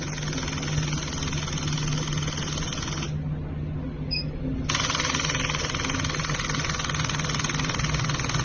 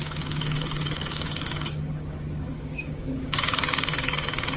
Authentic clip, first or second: first